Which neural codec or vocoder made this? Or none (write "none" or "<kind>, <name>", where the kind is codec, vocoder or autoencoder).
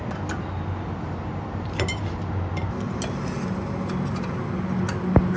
none